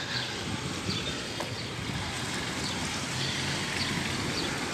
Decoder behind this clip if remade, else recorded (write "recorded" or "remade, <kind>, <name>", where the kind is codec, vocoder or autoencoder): recorded